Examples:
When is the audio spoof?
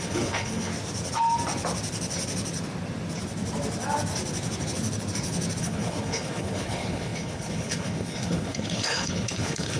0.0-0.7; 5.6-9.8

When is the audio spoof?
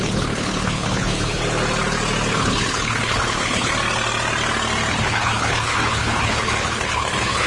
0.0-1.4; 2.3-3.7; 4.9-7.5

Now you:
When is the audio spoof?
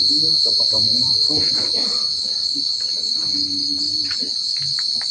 none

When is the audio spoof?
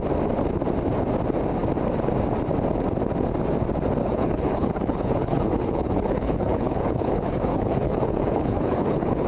4.0-9.3